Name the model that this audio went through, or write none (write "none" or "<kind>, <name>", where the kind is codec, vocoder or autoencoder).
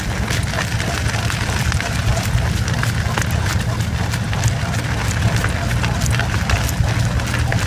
none